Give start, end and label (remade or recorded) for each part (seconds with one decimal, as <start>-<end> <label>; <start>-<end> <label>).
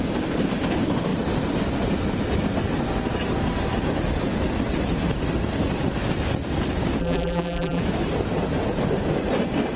0.0-7.0 recorded; 7.0-7.8 remade; 7.8-9.8 recorded